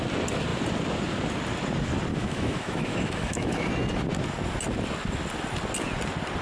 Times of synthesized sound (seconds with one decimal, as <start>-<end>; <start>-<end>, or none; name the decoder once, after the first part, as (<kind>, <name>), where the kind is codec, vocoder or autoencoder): 2.1-3.7 (autoencoder, DAC-VAE)